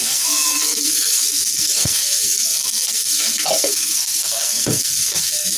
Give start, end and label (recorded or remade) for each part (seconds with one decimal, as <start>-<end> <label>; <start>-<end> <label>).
0.0-5.6 remade